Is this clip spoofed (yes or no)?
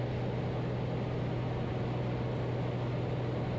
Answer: no